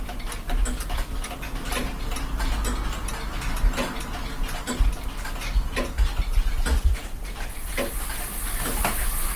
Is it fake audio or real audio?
real